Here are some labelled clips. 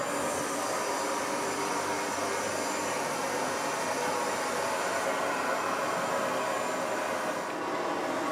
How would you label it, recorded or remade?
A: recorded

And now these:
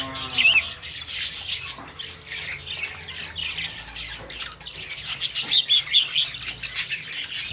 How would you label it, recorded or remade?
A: recorded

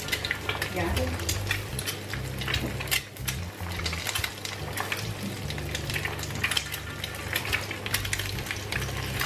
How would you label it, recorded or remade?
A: recorded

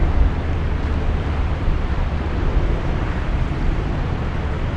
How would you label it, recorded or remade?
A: remade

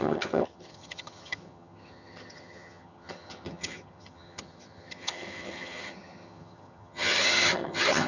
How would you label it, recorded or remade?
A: remade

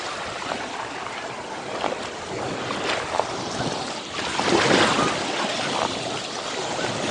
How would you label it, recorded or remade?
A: recorded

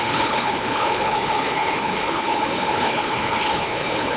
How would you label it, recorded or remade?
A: remade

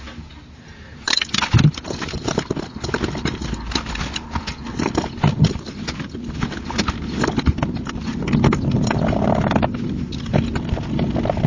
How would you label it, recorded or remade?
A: recorded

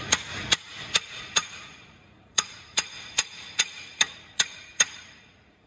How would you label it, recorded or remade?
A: remade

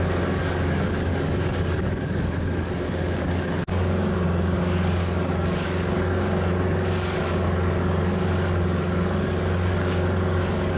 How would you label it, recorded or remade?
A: remade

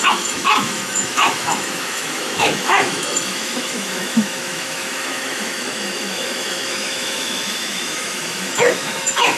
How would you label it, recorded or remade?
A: remade